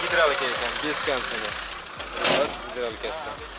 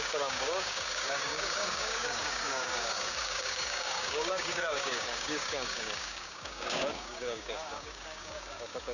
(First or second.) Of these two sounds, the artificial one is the second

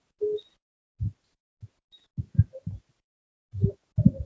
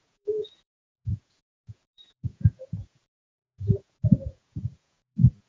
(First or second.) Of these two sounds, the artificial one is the second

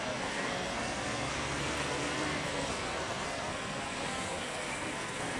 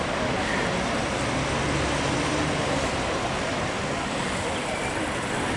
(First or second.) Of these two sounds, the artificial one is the first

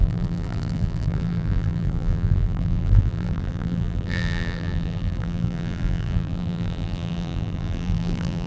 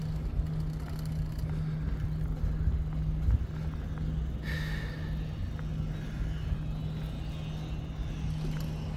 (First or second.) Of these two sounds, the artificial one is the first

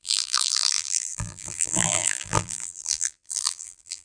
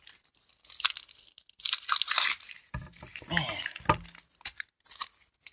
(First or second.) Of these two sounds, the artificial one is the first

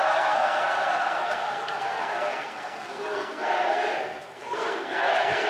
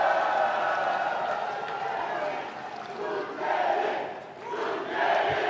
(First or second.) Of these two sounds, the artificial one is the first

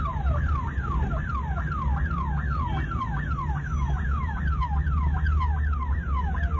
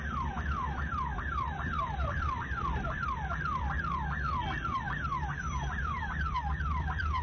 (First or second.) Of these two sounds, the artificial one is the second